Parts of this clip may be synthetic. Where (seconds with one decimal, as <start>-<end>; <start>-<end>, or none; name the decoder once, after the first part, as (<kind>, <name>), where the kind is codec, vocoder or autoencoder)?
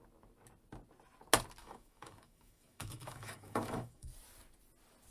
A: 1.6-4.1 (autoencoder, DAC-VAE)